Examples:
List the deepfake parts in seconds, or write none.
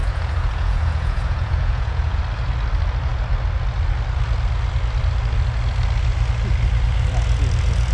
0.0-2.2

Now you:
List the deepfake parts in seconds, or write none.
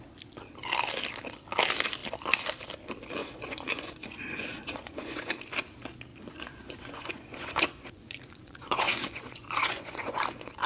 3.2-5.3; 6.1-10.2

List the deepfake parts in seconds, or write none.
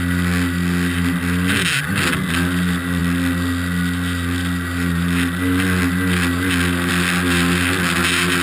none